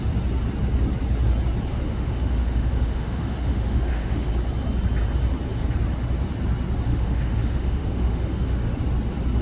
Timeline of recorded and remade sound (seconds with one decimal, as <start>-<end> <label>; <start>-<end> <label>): 0.0-1.7 recorded; 1.7-4.3 remade; 4.3-6.9 recorded; 6.9-8.8 remade; 8.8-9.4 recorded